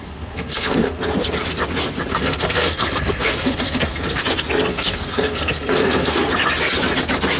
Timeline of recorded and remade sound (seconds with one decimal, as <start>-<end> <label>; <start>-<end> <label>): 0.0-1.0 remade; 1.0-2.1 recorded; 2.1-4.2 remade; 4.2-4.7 recorded; 4.7-6.3 remade; 6.3-7.4 recorded